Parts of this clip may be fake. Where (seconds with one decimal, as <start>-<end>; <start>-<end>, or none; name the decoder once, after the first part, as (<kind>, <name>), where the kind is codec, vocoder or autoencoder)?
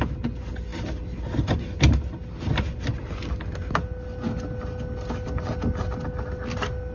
none